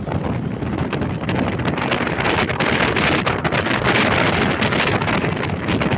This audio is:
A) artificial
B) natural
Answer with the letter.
B